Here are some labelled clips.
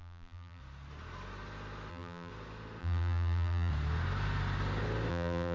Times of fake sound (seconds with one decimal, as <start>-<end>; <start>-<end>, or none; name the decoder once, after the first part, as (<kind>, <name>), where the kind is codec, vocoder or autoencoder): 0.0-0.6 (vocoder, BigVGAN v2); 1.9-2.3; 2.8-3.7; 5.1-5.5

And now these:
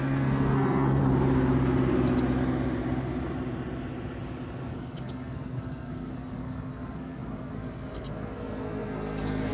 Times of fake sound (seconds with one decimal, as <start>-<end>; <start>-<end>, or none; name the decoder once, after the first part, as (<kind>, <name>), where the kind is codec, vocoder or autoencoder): 0.0-1.0 (codec, SNAC); 4.7-9.5

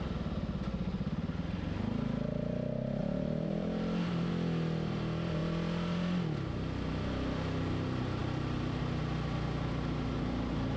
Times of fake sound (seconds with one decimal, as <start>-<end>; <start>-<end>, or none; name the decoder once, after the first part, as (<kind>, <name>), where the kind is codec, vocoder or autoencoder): 3.0-4.3 (vocoder, BigVGAN v2); 8.2-8.8

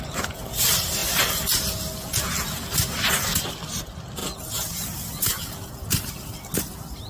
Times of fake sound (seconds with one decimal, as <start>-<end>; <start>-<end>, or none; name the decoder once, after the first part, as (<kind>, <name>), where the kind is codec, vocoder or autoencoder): none